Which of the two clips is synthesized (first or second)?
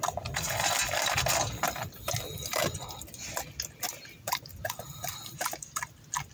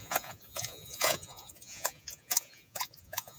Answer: second